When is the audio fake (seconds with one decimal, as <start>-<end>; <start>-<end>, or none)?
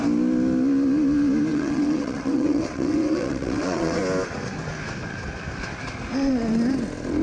1.5-4.0